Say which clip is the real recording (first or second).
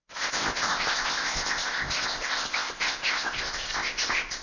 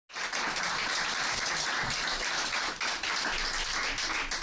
second